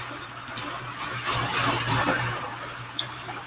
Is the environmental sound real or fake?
fake